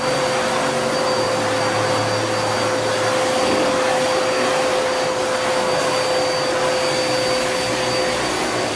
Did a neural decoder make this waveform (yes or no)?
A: no